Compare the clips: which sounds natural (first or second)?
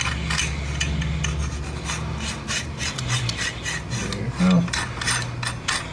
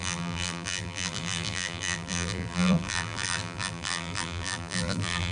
first